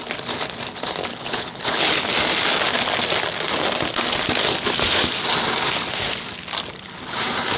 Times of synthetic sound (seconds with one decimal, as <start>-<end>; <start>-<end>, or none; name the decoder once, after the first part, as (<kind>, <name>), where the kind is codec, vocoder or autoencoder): 1.1-2.1 (codec, HILCodec)